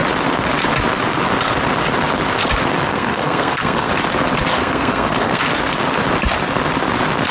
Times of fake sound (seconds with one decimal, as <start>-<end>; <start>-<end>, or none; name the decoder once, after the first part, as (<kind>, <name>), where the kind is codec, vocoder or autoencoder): 2.9-3.9 (codec, SNAC); 4.5-5.4